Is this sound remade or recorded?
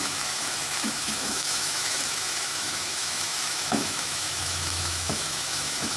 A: remade